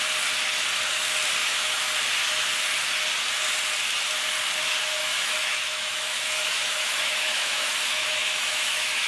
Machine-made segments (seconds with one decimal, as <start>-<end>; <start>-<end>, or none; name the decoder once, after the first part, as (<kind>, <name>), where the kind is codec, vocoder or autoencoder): 1.4-1.9 (autoencoder, DAC-VAE); 5.0-9.1